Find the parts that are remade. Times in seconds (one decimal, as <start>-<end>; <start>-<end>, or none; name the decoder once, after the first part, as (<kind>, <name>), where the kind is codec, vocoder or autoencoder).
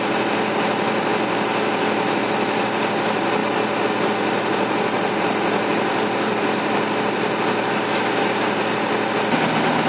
none